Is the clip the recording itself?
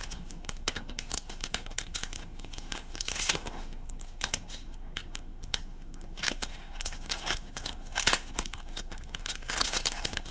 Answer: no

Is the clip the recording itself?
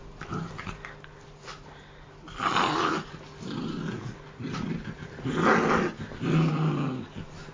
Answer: yes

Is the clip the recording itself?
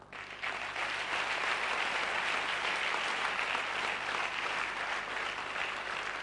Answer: yes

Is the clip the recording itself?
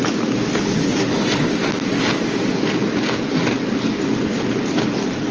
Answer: yes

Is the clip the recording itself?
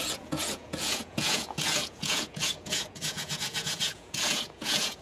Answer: no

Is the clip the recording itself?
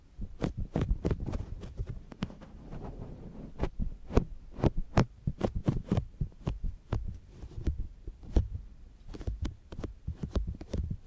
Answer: no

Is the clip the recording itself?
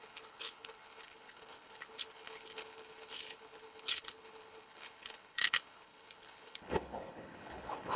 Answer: no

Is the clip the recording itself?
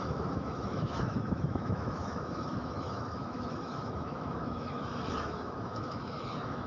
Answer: no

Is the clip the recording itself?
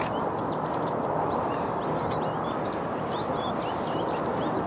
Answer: yes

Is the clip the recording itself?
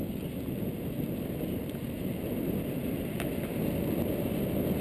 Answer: yes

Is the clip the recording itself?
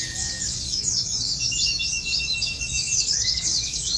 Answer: no